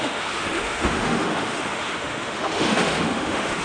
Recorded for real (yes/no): no